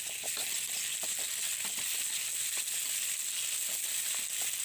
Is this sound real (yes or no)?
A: yes